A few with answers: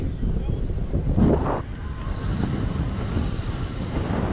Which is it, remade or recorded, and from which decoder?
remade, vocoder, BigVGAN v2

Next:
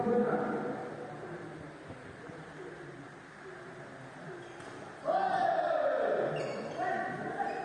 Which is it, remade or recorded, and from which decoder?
recorded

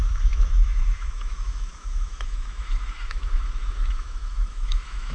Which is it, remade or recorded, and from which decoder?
remade, autoencoder, DAC-VAE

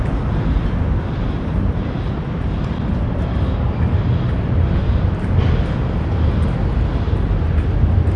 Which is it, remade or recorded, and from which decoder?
recorded